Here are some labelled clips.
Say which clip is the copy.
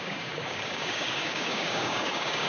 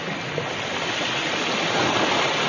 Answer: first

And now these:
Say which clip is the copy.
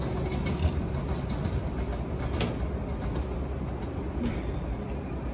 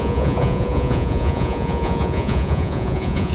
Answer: second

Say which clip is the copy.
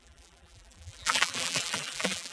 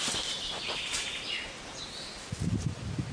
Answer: first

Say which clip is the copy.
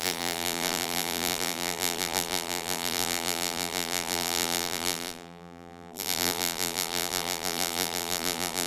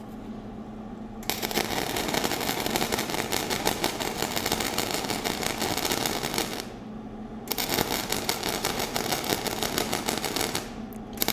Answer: first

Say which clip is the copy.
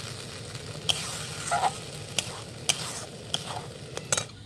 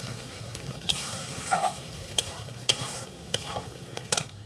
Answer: second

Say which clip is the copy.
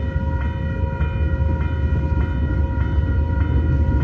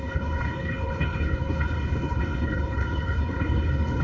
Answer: second